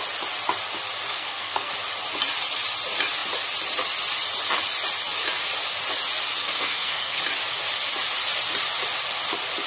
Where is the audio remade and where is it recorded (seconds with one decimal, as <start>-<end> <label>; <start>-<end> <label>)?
0.0-1.1 recorded; 1.1-1.7 remade; 1.7-6.4 recorded; 6.4-7.2 remade; 7.2-9.7 recorded